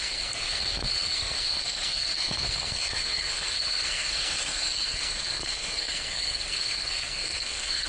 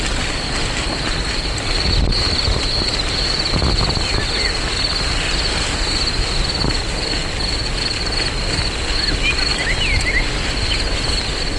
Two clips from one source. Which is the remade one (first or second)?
first